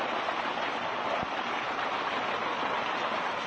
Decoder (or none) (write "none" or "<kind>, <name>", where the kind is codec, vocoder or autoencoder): none